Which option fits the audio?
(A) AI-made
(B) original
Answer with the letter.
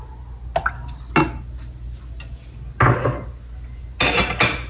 B